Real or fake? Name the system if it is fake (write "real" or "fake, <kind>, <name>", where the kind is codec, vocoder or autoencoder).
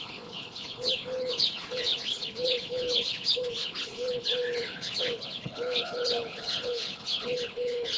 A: fake, codec, HILCodec